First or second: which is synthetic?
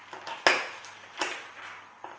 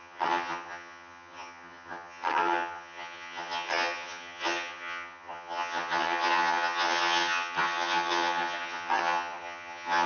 second